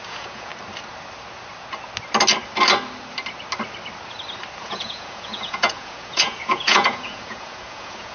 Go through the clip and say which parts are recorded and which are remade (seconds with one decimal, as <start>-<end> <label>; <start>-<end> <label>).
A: 0.0-0.5 remade; 0.5-4.6 recorded; 4.6-8.1 remade